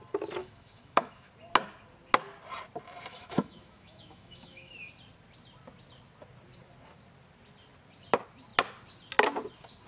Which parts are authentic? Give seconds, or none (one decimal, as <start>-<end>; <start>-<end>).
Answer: 0.0-0.4; 1.3-3.1; 4.9-9.9